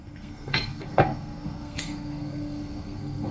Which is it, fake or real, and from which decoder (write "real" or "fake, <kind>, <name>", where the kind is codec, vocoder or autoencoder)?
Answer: fake, codec, SNAC